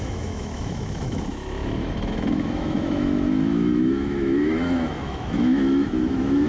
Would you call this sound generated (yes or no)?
yes